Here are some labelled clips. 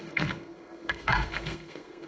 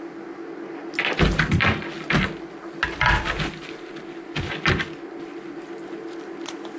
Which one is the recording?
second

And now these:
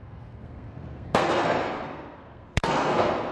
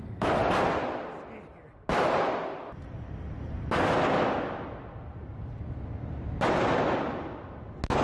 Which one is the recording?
second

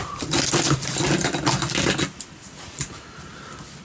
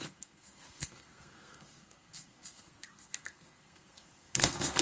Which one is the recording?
first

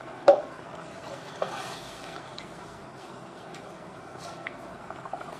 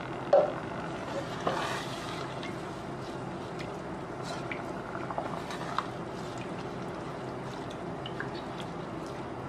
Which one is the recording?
second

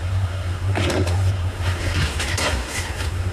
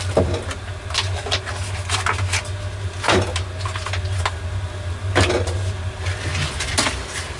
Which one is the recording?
second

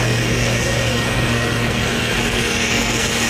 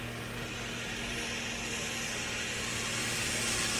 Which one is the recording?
second